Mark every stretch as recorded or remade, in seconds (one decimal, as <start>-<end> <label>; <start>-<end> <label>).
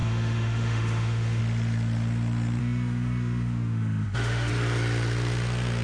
0.0-1.4 remade; 1.4-2.6 recorded; 2.6-4.5 remade; 4.5-5.8 recorded